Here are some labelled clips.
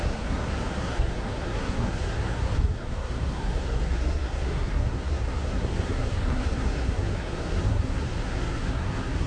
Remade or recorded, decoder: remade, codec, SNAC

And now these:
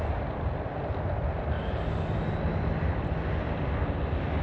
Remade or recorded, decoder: recorded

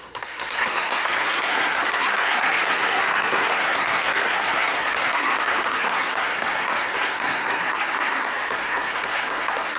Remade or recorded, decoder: remade, codec, SNAC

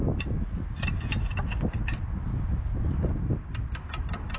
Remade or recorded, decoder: recorded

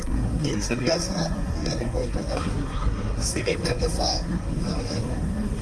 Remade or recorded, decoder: remade, codec, SNAC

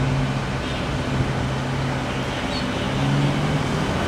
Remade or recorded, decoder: recorded